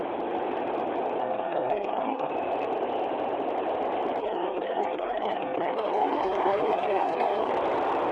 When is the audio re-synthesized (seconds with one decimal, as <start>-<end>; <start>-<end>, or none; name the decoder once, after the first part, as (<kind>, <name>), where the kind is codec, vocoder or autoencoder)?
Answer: 1.2-2.3 (codec, SNAC); 4.2-7.5

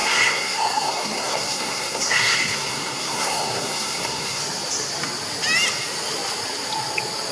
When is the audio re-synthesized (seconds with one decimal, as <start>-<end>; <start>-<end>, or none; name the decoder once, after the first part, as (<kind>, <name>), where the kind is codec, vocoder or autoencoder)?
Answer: 0.0-4.4 (codec, SNAC)

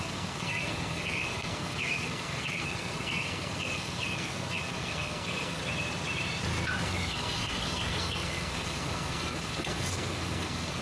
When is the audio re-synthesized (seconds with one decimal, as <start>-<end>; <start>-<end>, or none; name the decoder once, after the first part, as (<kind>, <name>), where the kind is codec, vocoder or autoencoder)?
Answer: 0.0-5.6 (codec, SNAC); 6.8-10.8

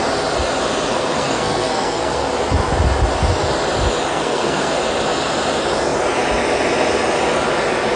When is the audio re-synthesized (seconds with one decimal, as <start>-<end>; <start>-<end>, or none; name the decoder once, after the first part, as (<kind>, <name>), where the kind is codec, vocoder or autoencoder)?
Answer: 0.9-2.3 (codec, SNAC); 4.1-4.8

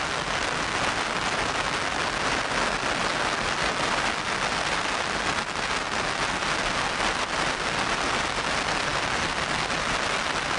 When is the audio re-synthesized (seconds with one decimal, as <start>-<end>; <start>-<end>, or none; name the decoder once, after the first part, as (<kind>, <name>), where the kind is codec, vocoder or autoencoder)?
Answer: none

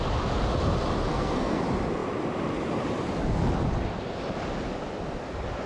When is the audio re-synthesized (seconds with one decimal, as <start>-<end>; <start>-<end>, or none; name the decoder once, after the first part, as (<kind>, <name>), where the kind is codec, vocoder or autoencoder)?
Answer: 1.1-1.6 (codec, SNAC)

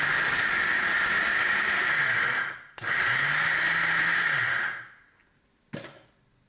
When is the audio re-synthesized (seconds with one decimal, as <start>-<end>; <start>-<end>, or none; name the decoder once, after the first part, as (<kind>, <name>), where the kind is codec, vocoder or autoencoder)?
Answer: none

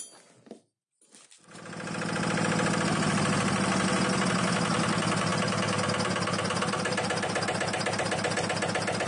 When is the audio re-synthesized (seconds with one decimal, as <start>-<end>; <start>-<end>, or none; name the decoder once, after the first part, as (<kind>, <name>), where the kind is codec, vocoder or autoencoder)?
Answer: none